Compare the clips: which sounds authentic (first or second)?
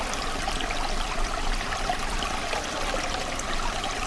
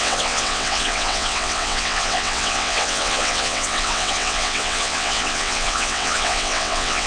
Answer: first